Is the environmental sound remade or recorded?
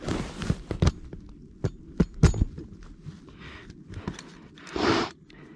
recorded